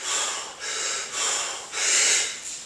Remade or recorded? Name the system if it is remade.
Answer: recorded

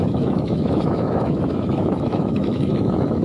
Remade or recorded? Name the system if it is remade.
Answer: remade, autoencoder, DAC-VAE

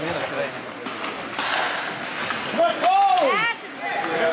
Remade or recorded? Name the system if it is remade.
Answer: recorded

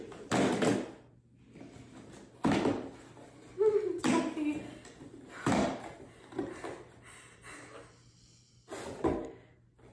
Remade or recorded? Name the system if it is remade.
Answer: recorded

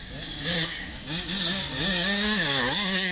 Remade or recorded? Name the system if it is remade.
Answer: remade, codec, DAC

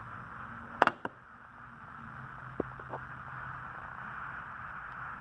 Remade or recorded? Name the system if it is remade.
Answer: recorded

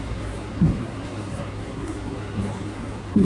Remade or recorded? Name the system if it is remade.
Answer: remade, codec, SNAC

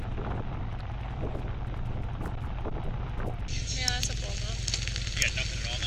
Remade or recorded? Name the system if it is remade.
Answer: recorded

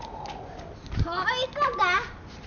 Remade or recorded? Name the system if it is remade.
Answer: recorded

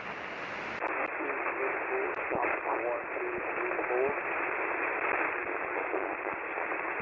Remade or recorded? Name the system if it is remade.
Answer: recorded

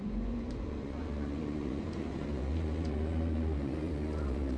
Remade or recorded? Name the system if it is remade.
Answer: remade, vocoder, Vocos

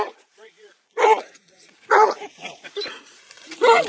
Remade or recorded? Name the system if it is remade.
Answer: remade, vocoder, Vocos